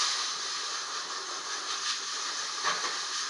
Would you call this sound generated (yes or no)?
no